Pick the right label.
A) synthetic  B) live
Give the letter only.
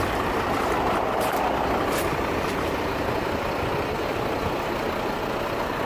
B